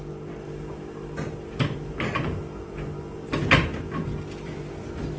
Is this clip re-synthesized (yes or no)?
no